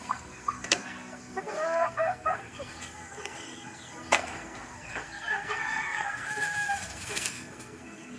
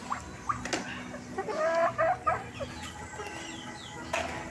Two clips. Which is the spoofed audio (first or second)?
first